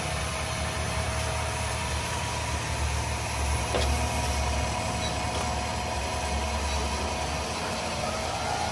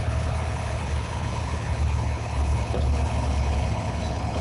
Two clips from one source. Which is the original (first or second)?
first